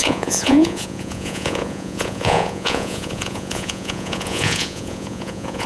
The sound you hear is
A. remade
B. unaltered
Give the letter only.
A